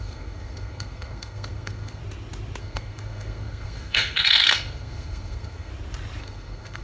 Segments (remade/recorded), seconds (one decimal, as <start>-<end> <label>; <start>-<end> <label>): 0.0-2.0 remade; 2.0-2.6 recorded; 2.6-5.7 remade; 5.7-6.2 recorded; 6.2-6.8 remade